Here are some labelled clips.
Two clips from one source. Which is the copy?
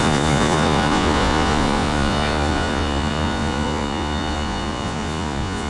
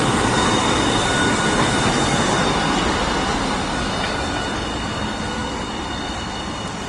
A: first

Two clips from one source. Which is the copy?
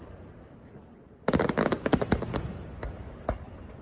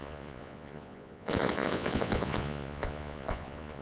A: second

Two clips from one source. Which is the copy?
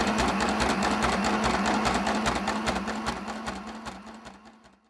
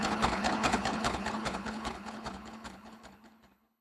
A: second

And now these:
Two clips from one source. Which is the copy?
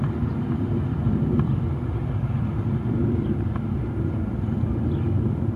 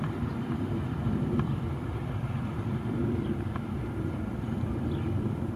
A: second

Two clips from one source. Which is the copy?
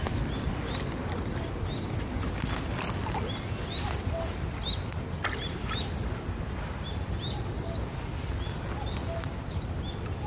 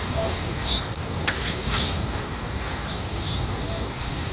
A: second